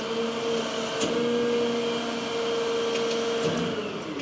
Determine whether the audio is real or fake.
real